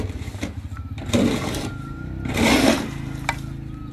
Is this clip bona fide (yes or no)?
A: yes